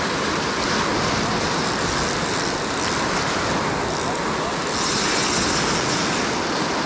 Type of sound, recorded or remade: recorded